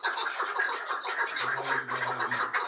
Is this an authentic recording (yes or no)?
yes